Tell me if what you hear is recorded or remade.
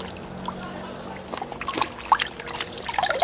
recorded